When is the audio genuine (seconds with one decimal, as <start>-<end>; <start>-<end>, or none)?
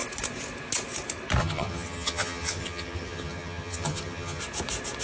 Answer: 0.0-1.4; 4.4-5.0